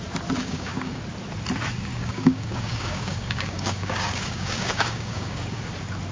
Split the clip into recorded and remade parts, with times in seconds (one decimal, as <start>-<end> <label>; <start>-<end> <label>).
0.0-0.4 recorded; 0.4-1.0 remade; 1.0-1.9 recorded; 1.9-5.6 remade; 5.6-6.1 recorded